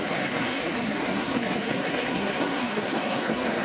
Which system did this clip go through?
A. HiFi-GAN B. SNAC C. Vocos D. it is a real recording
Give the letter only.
B